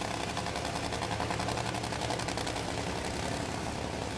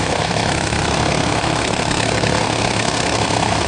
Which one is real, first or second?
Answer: first